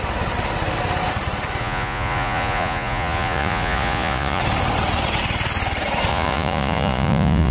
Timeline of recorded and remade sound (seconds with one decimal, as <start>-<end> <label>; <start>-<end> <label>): 0.0-1.6 recorded; 1.6-4.4 remade; 4.4-6.1 recorded; 6.1-7.5 remade